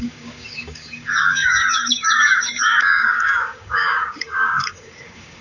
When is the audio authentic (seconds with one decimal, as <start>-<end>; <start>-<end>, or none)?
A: none